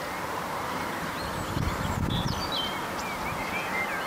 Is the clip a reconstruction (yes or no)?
yes